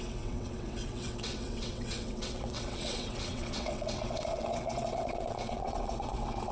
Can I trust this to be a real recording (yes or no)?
no